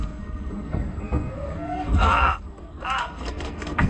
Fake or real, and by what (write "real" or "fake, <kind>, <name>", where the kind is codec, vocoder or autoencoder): fake, codec, SNAC